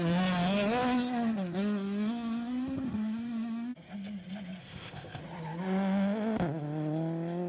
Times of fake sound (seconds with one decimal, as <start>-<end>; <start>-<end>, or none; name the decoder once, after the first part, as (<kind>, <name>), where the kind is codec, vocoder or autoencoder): 4.6-5.2 (codec, ZipCodec)

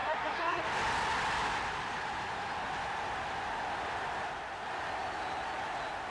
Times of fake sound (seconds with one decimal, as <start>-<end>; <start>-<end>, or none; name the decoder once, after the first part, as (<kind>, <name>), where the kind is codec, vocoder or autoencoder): 0.0-0.6 (codec, SNAC)

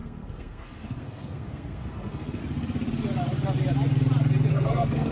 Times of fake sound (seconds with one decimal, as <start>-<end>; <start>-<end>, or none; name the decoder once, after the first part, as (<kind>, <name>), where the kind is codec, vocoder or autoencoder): 0.0-2.4 (codec, SNAC); 4.5-5.1

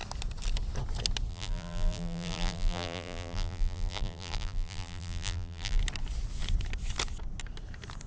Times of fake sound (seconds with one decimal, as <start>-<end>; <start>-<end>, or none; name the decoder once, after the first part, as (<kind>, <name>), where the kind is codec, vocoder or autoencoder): 1.3-5.8 (vocoder, BigVGAN v2)

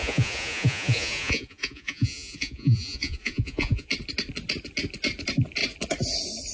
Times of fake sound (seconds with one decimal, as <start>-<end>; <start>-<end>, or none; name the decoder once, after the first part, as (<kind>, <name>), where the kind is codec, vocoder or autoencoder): 0.0-3.9 (vocoder, Vocos)

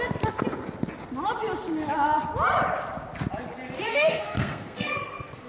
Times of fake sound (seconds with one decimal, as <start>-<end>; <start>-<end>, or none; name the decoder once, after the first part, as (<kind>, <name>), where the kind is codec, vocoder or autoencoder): 3.9-5.5 (codec, SNAC)